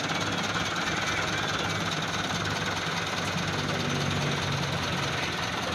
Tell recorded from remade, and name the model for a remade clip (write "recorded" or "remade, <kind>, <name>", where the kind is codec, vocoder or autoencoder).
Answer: recorded